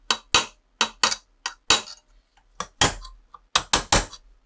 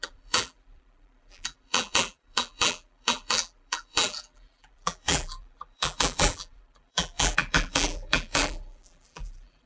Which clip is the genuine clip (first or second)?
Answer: first